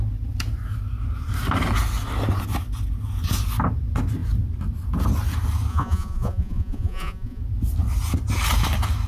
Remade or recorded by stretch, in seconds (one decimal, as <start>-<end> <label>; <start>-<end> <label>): 0.0-5.7 recorded; 5.7-7.4 remade; 7.4-9.1 recorded

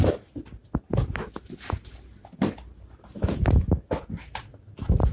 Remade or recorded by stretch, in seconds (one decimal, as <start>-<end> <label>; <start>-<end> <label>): 0.0-5.1 recorded

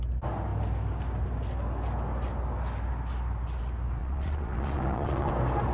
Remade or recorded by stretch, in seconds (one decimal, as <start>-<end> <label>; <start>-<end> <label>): 0.0-4.0 recorded; 4.0-5.3 remade; 5.3-5.7 recorded

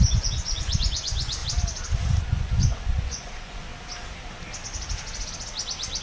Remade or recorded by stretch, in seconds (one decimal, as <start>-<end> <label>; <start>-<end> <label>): 0.0-1.4 remade; 1.4-2.2 recorded; 2.2-3.7 remade; 3.7-6.0 recorded

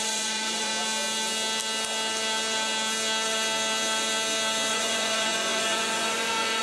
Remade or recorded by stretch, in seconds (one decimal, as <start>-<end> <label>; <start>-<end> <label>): 0.0-0.7 remade; 0.7-4.7 recorded; 4.7-6.6 remade

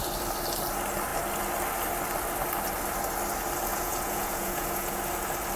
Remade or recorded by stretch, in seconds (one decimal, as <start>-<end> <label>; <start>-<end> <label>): 0.0-3.7 recorded; 3.7-5.0 remade; 5.0-5.6 recorded

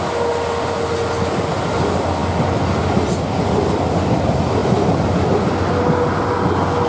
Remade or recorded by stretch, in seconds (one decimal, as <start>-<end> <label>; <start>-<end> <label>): 0.0-6.9 recorded